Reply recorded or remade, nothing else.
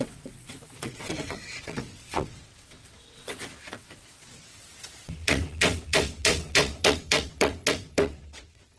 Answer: remade